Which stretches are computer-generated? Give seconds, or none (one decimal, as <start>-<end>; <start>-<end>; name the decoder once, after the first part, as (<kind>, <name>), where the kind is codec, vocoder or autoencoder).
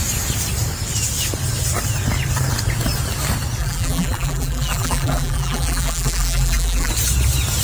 3.6-6.9 (vocoder, BigVGAN v2)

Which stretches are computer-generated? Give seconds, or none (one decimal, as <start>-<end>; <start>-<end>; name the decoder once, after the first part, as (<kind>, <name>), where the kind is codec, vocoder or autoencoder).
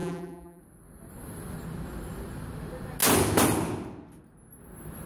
0.0-0.6 (vocoder, BigVGAN v2)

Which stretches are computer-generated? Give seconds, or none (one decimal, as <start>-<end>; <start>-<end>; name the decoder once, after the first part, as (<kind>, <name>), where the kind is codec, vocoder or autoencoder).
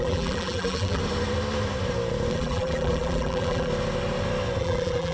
0.0-1.0 (vocoder, BigVGAN v2); 2.3-3.7; 4.6-5.1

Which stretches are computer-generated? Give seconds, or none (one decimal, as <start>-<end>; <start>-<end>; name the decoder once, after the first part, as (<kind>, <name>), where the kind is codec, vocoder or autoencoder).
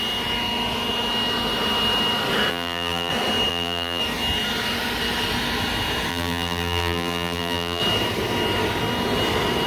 2.5-3.1 (vocoder, BigVGAN v2); 3.5-4.0; 6.1-7.8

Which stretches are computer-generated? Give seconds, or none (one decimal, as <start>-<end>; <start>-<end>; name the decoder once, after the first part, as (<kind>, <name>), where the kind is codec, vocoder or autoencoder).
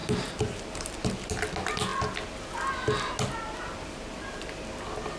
0.0-0.9 (vocoder, BigVGAN v2)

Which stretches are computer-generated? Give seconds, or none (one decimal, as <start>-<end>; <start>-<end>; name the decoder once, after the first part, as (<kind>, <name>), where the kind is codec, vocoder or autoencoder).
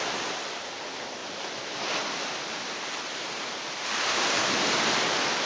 0.0-5.5 (vocoder, BigVGAN v2)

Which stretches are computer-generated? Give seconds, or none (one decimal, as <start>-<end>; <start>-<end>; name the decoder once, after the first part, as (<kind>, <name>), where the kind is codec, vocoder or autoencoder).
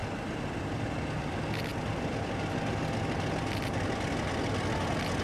none